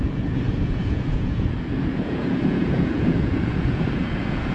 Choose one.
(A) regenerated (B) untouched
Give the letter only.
A